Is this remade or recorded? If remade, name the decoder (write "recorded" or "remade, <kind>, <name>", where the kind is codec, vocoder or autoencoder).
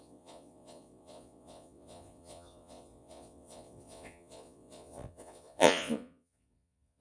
remade, vocoder, Vocos